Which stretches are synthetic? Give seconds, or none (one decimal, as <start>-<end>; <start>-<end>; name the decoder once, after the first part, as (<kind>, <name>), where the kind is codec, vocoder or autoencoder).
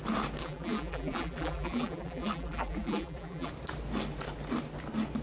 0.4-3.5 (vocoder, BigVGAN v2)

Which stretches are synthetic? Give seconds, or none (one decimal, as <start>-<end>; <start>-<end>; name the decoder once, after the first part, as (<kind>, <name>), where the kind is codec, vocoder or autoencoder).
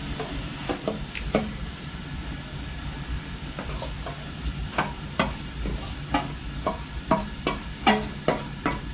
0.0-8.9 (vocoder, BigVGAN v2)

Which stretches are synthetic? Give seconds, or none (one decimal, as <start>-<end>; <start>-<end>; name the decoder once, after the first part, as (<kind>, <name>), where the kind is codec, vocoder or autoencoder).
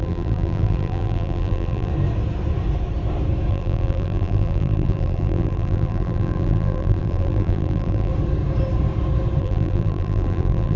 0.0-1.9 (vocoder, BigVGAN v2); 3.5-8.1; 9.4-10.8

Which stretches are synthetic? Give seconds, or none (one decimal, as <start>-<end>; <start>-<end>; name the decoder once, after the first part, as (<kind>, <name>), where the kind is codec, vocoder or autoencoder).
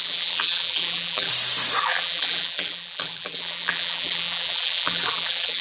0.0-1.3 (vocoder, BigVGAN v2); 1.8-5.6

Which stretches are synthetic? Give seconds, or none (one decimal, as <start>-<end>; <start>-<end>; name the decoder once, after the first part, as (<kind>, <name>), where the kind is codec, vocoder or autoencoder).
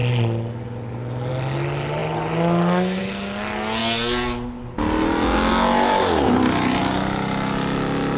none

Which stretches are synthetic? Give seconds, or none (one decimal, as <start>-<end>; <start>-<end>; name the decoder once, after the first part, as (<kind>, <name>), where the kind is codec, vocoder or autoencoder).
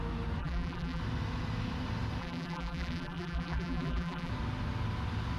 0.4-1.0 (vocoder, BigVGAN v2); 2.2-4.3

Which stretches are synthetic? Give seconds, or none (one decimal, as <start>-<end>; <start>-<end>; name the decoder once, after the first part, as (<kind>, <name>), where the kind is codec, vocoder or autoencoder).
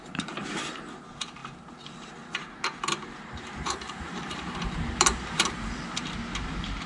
0.0-6.9 (vocoder, BigVGAN v2)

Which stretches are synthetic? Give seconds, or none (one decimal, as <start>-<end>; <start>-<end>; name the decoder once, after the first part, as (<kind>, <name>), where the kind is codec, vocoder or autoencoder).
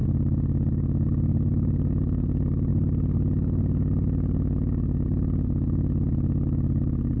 0.0-2.7 (vocoder, BigVGAN v2)